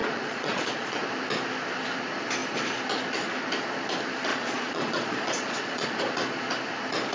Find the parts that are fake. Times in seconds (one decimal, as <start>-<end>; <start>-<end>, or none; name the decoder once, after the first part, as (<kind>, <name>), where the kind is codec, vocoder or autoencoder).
0.0-1.0 (vocoder, Vocos); 4.3-6.0